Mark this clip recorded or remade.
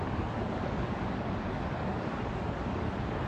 remade